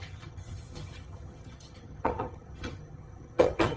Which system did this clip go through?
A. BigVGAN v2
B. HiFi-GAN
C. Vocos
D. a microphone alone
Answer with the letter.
B